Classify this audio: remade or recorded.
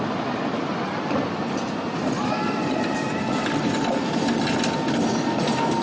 recorded